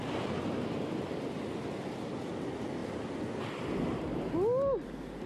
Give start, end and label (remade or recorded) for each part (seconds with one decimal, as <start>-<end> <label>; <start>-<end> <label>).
0.0-5.3 recorded